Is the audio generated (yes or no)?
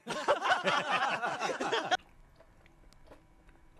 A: no